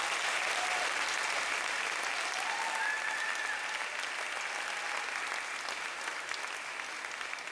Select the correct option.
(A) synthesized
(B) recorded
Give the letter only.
B